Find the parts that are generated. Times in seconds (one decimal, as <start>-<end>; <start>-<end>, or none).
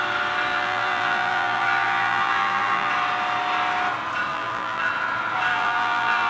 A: 0.5-2.9; 4.3-4.9; 5.5-6.3